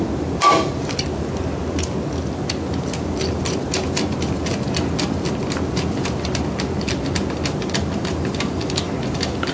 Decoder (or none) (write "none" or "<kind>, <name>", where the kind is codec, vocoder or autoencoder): none